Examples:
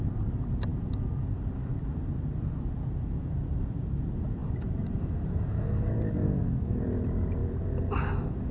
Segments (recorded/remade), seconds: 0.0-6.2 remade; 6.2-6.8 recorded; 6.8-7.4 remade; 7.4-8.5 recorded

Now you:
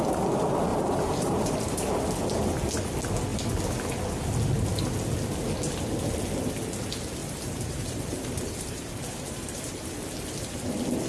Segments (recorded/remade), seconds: 0.0-0.7 recorded; 0.7-1.9 remade; 1.9-7.2 recorded; 7.2-9.9 remade; 9.9-11.1 recorded

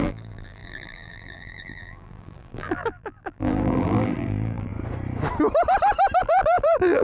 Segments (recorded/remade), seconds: 0.0-4.7 remade; 4.7-6.2 recorded; 6.2-7.0 remade

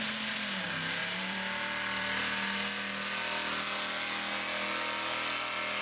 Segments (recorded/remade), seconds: 0.0-1.0 recorded; 1.0-2.2 remade; 2.2-5.8 recorded